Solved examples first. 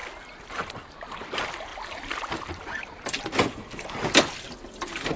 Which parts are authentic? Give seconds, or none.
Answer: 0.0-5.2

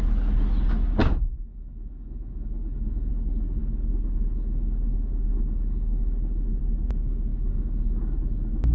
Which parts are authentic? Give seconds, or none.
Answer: 0.0-1.0; 3.1-3.6; 6.6-7.3; 8.2-8.7